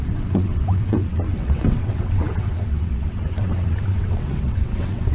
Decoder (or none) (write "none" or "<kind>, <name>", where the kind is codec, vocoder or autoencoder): vocoder, WaveNeXt